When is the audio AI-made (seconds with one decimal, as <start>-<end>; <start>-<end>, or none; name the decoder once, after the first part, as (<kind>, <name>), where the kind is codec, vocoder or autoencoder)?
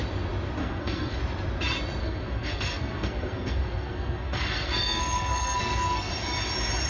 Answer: 0.6-1.2 (codec, SNAC); 2.0-6.1